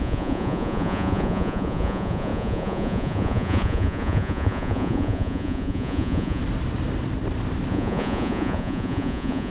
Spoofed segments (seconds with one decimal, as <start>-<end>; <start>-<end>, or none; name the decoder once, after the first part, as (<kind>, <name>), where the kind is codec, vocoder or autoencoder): 0.0-6.4 (vocoder, Vocos); 7.7-9.5

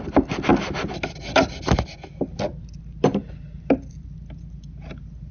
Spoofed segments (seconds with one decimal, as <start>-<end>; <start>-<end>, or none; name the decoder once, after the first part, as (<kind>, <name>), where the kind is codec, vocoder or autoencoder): none